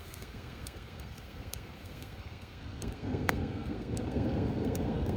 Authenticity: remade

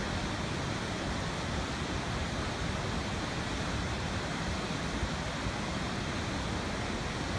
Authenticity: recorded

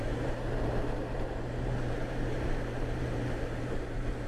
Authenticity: remade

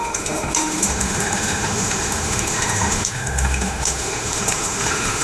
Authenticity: remade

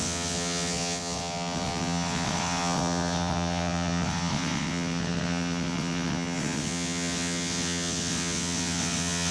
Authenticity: remade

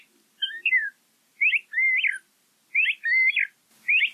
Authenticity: recorded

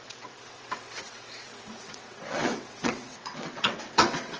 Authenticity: remade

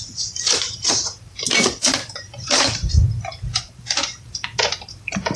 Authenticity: remade